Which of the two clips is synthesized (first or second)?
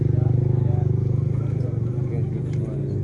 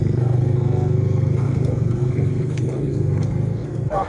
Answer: second